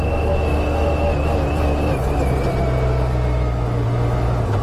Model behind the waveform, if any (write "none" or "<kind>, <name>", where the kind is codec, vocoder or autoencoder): none